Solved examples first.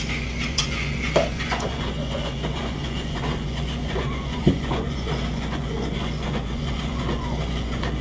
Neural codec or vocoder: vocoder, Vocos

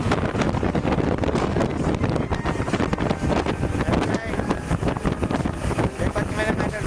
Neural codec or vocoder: none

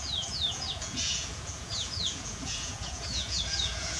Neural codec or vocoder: vocoder, Vocos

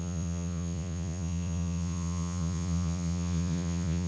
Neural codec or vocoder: vocoder, Vocos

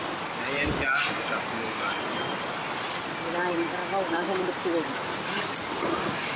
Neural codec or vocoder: none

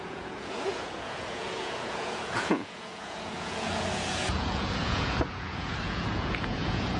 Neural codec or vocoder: vocoder, Vocos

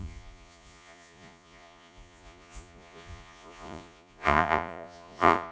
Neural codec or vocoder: vocoder, Vocos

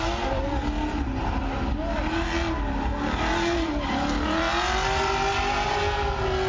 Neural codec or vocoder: none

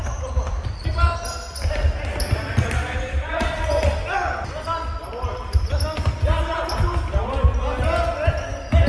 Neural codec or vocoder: none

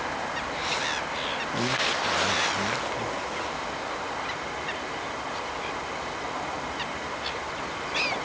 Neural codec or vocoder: none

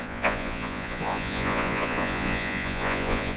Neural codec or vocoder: vocoder, Vocos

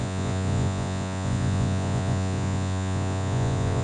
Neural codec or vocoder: vocoder, Vocos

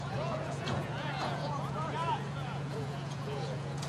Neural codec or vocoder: vocoder, Vocos